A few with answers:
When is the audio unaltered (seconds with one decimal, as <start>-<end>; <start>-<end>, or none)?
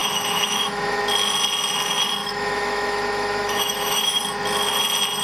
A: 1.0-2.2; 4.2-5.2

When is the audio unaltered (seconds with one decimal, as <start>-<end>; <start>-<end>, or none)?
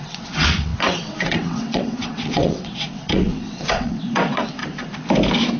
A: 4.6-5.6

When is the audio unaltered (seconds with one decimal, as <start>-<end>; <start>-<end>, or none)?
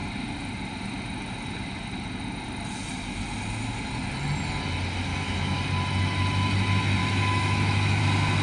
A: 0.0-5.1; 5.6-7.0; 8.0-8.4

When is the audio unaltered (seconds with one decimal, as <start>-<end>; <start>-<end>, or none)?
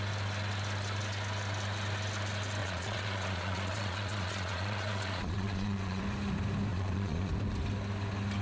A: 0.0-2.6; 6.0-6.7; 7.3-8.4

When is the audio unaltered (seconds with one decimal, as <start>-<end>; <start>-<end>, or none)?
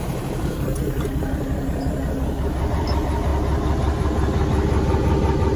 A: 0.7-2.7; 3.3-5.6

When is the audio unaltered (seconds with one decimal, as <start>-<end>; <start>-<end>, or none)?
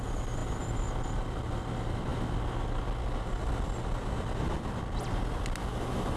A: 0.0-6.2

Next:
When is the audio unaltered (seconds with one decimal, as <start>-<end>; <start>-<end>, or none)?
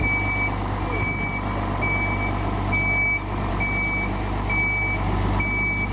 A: 0.0-5.9